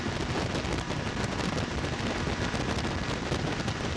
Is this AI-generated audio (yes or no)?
no